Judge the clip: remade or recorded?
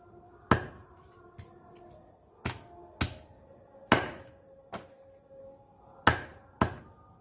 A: recorded